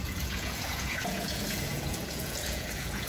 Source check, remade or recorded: remade